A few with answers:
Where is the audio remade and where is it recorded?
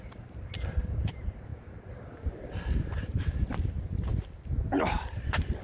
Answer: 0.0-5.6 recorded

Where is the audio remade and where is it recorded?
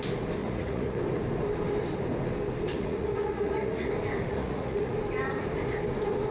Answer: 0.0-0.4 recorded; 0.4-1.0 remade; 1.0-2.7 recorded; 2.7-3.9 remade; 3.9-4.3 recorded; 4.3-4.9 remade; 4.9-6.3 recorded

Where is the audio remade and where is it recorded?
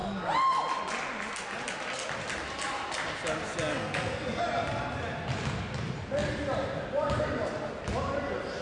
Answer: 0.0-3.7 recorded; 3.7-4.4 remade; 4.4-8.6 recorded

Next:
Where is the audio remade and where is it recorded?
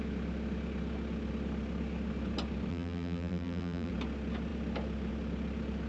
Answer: 0.0-2.7 recorded; 2.7-3.9 remade; 3.9-5.9 recorded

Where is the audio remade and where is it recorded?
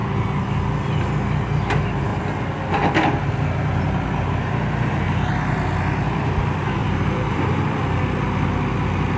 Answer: 0.0-6.8 recorded; 6.8-7.7 remade; 7.7-9.2 recorded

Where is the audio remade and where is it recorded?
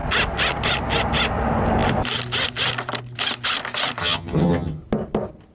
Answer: 0.0-4.0 recorded; 4.0-4.8 remade; 4.8-5.5 recorded